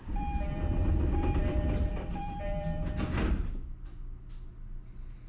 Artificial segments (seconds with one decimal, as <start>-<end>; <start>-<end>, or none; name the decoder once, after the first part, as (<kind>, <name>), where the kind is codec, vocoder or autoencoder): 0.0-3.2 (vocoder, BigVGAN v2)